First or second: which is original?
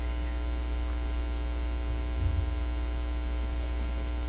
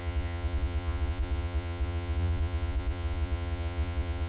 first